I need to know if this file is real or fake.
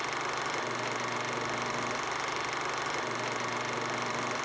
real